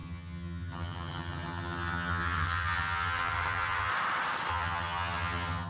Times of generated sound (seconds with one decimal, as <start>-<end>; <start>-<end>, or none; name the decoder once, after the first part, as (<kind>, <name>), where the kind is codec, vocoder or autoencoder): 0.0-3.9 (vocoder, HiFi-GAN); 4.5-5.7